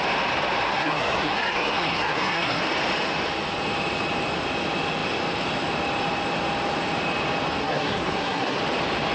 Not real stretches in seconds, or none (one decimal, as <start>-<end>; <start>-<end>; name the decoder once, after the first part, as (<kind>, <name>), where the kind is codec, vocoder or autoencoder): 0.7-2.6 (codec, SNAC); 7.6-8.6